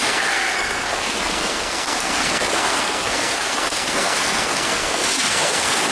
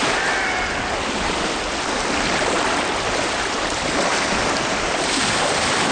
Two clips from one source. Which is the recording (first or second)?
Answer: second